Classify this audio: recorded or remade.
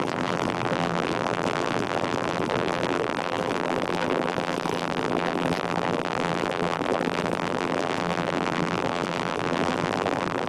remade